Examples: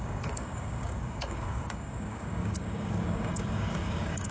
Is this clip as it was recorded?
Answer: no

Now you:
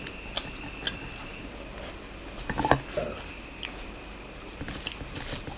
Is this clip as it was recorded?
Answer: yes